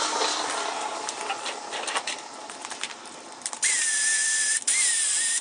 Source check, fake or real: real